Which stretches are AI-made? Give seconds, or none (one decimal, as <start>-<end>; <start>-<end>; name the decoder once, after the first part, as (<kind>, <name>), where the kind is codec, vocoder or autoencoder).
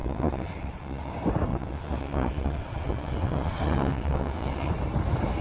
0.0-1.1 (vocoder, WaveNeXt); 1.5-4.7